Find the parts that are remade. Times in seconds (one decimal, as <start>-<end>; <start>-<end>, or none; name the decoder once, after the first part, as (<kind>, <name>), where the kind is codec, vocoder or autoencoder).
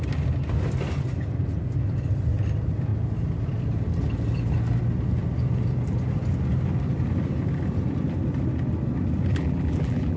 9.3-10.2 (vocoder, BigVGAN v2)